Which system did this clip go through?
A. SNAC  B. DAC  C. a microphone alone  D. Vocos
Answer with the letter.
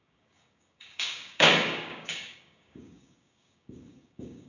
B